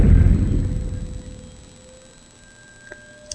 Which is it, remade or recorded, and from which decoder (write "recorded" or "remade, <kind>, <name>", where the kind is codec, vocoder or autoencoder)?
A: recorded